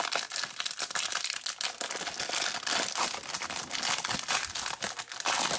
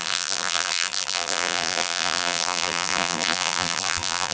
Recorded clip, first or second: first